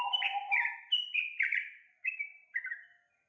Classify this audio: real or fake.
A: real